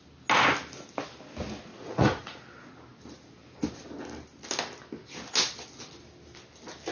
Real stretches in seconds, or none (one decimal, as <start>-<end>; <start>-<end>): 0.0-1.7; 2.4-6.9